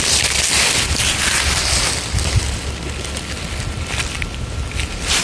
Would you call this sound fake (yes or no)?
yes